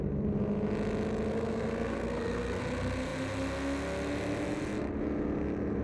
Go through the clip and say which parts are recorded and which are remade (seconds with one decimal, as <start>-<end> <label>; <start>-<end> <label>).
0.0-1.3 recorded; 1.3-2.6 remade; 2.6-5.8 recorded